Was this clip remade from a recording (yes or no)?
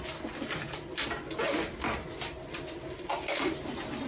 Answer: no